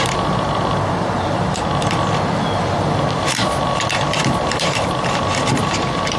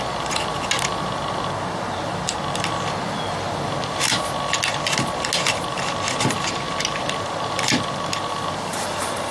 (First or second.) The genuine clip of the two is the second